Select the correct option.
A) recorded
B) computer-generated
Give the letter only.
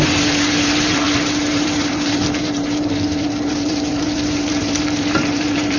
B